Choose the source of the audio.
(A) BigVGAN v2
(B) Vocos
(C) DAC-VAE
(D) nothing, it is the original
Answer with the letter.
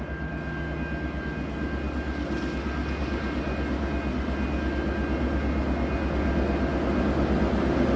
D